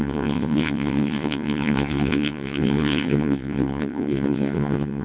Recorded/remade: remade